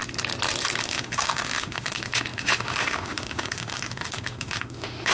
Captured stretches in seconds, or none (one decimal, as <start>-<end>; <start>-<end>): 0.0-0.8